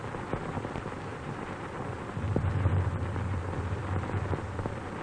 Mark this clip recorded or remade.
recorded